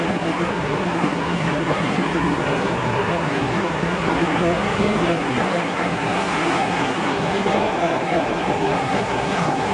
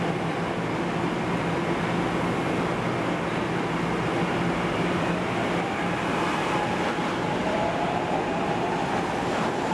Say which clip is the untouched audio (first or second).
second